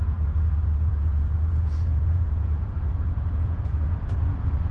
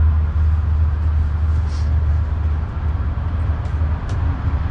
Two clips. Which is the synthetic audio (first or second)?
first